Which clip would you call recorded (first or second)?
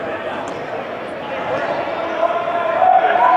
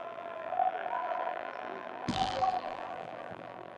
first